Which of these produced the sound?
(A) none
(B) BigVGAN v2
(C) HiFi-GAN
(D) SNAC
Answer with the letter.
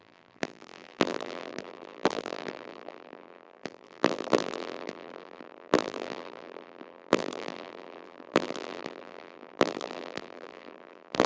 B